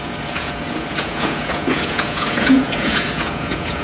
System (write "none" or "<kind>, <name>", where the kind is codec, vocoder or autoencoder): vocoder, Vocos